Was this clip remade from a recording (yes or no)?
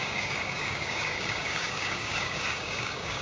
yes